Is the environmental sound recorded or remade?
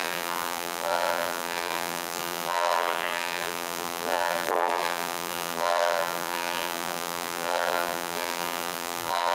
remade